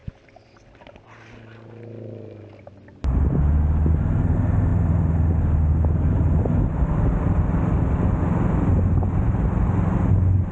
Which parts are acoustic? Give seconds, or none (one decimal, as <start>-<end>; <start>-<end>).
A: 0.0-10.5